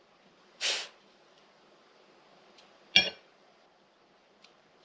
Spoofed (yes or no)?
no